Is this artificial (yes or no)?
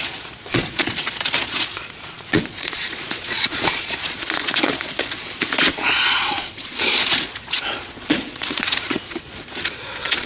yes